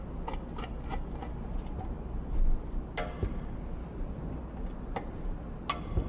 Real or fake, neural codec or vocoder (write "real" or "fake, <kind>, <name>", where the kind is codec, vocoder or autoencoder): real